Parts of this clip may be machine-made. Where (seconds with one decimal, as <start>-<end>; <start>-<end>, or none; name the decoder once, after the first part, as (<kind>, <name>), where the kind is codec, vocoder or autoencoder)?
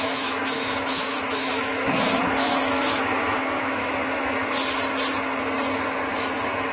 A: 0.0-4.4 (autoencoder, DAC-VAE)